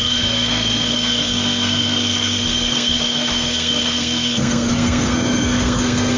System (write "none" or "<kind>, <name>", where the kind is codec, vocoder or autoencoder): codec, SNAC